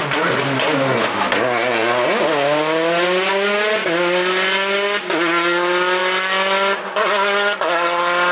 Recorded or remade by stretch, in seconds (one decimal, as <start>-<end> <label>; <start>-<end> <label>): 0.0-8.3 recorded